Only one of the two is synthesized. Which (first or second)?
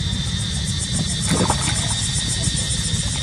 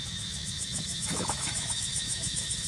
second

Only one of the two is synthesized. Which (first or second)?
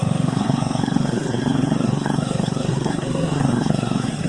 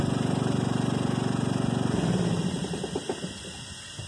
first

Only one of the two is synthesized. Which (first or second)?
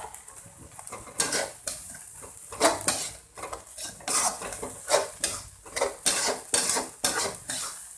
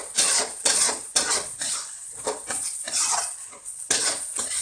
second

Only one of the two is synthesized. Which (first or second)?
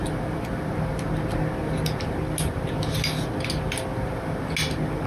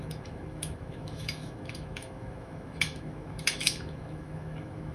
second